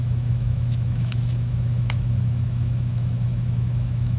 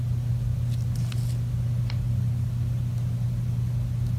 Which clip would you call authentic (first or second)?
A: second